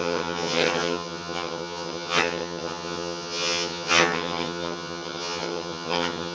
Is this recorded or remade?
remade